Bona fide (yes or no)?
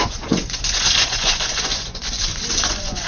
no